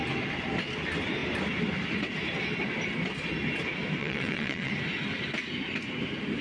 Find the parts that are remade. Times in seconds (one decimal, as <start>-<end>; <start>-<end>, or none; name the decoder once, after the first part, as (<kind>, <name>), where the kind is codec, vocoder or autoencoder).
4.0-4.7 (vocoder, WaveNeXt)